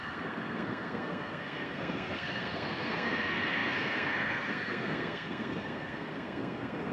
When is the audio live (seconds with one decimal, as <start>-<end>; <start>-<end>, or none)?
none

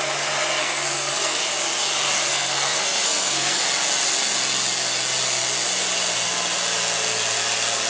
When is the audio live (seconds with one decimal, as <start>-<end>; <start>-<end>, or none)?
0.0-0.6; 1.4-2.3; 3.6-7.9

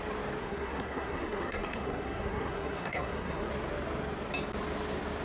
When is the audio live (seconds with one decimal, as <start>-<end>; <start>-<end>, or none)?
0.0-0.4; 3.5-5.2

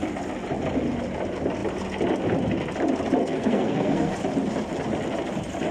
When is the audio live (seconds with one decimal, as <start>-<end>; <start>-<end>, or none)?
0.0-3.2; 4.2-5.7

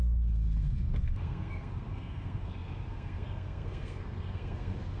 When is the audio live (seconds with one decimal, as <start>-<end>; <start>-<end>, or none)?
none

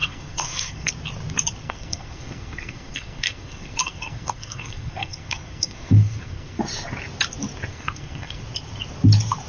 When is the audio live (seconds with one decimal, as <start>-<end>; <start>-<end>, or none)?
0.9-1.6; 6.6-7.7; 8.4-9.5

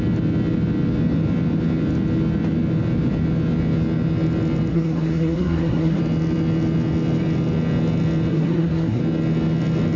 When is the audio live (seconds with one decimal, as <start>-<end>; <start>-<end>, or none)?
0.0-4.7; 6.0-8.3; 9.0-10.0

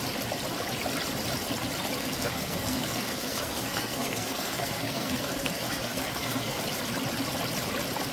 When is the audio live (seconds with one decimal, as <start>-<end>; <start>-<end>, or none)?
0.0-2.0; 6.6-8.1